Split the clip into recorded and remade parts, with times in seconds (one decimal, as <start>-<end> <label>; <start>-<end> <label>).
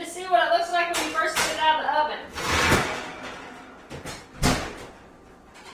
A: 0.0-5.7 recorded